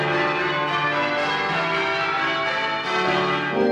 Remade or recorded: recorded